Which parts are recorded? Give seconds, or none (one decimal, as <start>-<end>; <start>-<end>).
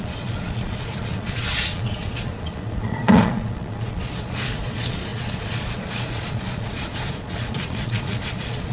none